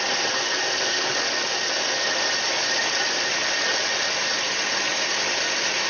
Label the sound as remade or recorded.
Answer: recorded